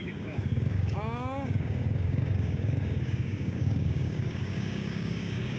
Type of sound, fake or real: fake